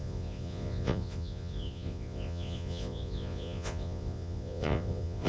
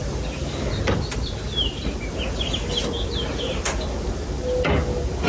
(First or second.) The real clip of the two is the second